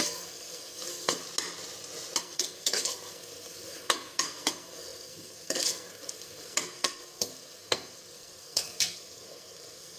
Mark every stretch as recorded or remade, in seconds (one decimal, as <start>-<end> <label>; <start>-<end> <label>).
0.0-1.2 remade; 1.2-2.2 recorded; 2.2-10.0 remade